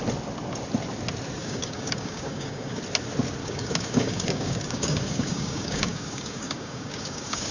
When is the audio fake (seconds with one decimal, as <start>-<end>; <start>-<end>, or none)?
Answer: 1.4-2.8; 3.4-7.5